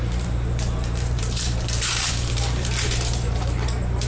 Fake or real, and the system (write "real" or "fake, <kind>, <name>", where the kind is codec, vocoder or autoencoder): fake, vocoder, BigVGAN v2